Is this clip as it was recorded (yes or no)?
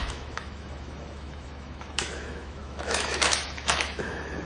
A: no